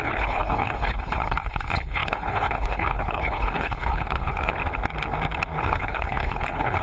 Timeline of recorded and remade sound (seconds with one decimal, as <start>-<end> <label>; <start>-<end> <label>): 0.0-4.6 remade; 4.6-5.6 recorded; 5.6-6.8 remade